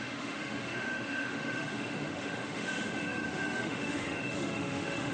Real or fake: fake